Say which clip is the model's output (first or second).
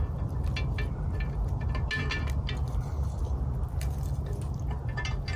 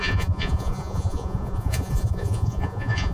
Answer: second